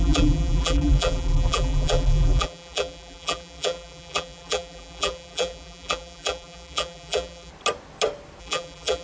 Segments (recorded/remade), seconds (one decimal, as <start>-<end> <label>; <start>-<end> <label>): 0.0-7.5 remade; 7.5-8.4 recorded; 8.4-9.0 remade